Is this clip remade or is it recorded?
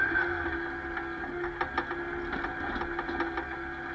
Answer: recorded